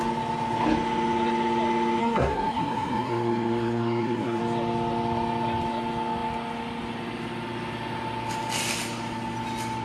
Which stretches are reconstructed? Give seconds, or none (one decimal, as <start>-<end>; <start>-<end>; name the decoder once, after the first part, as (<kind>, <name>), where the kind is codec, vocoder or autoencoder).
2.0-4.4 (codec, SNAC)